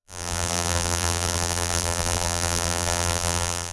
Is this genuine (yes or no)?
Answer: no